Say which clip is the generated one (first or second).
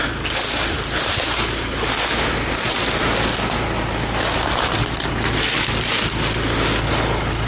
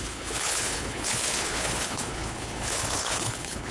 second